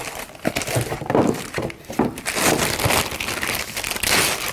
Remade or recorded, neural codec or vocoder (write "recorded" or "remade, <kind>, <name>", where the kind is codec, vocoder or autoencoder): recorded